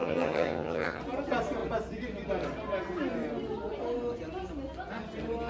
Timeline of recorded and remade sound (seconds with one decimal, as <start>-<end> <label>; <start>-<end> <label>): 0.0-1.0 remade; 1.0-5.5 recorded